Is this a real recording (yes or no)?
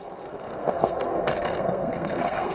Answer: no